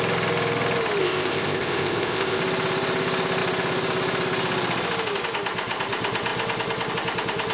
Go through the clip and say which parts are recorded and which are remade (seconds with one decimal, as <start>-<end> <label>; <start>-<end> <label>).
0.0-1.0 recorded; 1.0-2.4 remade; 2.4-7.5 recorded